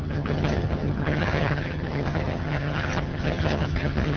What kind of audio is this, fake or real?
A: fake